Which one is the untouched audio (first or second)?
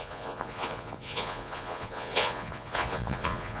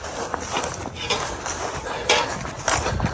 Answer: second